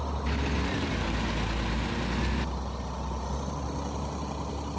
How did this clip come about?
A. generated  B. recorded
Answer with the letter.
B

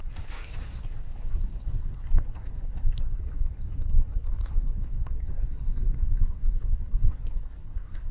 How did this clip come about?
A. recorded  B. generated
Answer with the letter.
B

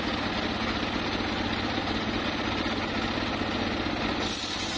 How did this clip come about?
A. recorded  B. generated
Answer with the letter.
A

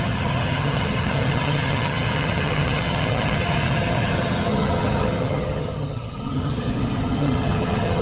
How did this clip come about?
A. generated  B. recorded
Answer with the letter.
A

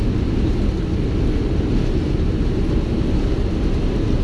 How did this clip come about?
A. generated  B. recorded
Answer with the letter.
B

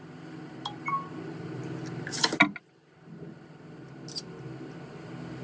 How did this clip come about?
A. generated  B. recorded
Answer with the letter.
B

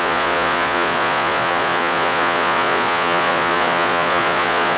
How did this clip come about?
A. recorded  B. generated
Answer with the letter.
B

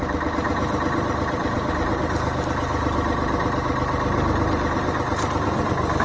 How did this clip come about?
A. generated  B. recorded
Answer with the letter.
B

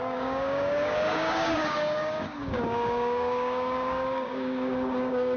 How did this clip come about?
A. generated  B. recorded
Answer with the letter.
A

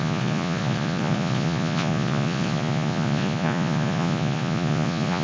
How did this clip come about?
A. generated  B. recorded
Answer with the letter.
A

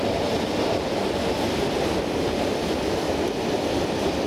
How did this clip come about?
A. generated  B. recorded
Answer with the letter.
B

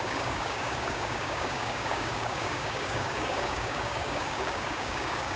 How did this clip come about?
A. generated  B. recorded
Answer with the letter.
A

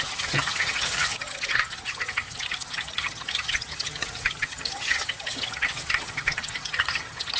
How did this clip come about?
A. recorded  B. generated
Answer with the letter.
B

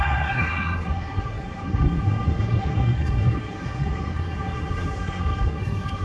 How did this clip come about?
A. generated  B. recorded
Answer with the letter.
A